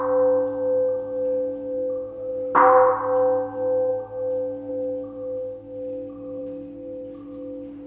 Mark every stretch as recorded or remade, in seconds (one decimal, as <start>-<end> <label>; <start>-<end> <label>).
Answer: 0.0-7.9 recorded